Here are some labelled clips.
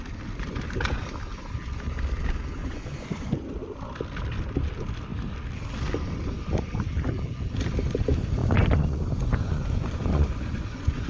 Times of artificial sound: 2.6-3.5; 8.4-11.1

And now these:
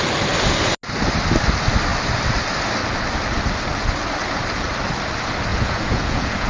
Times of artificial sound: 5.5-6.5

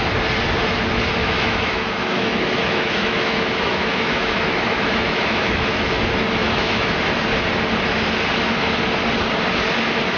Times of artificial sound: 1.2-6.0; 6.4-6.9

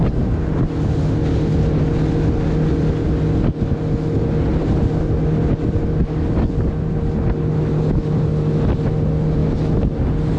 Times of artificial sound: none